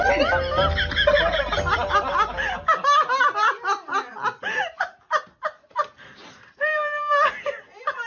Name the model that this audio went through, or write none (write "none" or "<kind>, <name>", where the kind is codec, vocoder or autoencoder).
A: none